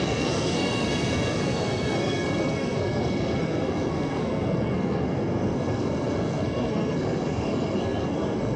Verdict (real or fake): fake